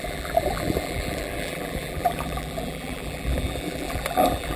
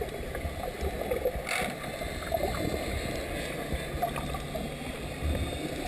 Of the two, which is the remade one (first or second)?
first